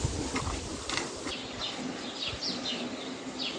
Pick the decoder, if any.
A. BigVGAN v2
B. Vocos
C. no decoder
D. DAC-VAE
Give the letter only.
C